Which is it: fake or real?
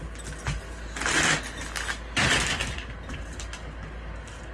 real